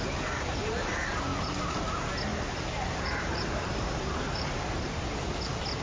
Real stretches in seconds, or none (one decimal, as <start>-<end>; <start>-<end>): 0.0-2.3; 5.1-5.8